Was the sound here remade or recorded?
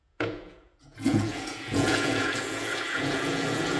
remade